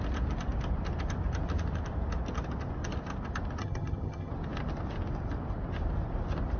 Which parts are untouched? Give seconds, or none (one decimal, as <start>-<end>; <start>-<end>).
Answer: 0.0-3.6; 4.3-6.6

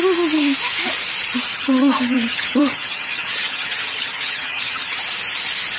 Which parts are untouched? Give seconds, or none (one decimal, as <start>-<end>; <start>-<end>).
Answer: 0.0-1.5; 5.0-5.8

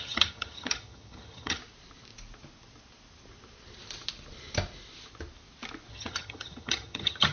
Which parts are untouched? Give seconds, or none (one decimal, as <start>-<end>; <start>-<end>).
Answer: 1.6-5.9

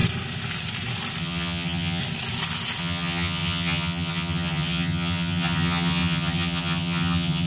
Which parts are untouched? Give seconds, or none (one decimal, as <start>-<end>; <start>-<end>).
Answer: 0.0-1.2; 2.0-2.8

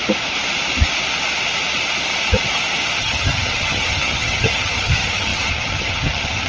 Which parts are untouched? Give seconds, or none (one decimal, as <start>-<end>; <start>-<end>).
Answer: 0.0-3.0

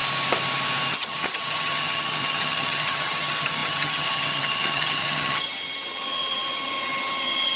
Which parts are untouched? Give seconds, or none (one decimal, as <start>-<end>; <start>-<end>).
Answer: 0.0-0.9